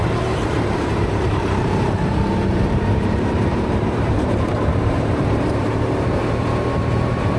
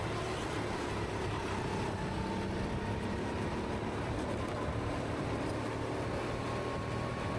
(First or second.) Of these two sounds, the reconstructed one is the first